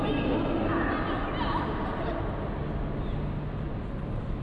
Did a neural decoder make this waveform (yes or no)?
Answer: no